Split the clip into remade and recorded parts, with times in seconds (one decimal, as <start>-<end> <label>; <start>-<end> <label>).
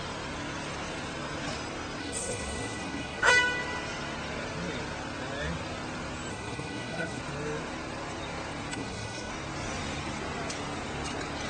0.0-2.0 recorded; 2.0-3.3 remade; 3.3-6.3 recorded; 6.3-7.2 remade; 7.2-8.7 recorded; 8.7-9.3 remade; 9.3-11.5 recorded